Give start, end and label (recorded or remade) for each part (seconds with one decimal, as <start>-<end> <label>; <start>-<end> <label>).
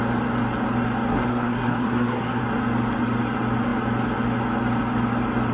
0.0-1.1 recorded; 1.1-2.4 remade; 2.4-5.5 recorded